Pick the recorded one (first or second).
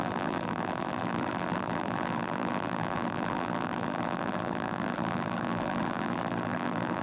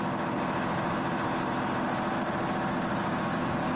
second